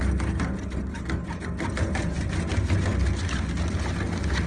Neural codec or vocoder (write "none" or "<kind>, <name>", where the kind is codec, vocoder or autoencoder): none